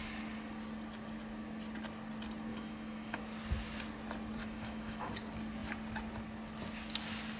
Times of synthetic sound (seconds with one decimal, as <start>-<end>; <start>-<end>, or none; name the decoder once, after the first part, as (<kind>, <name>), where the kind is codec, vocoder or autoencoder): 2.5-3.2 (autoencoder, DAC-VAE); 4.4-5.1